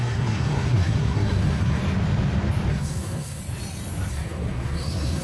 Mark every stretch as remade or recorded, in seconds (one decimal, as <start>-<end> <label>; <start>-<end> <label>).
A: 0.0-1.8 remade; 1.8-2.7 recorded; 2.7-3.4 remade; 3.4-4.1 recorded; 4.1-5.2 remade